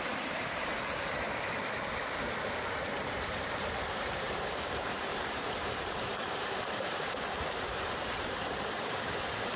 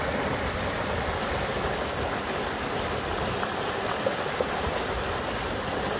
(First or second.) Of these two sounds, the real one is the second